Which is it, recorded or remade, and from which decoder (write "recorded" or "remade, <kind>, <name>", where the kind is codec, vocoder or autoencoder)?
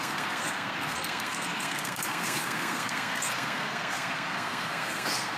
remade, codec, SNAC